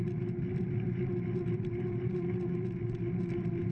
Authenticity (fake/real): real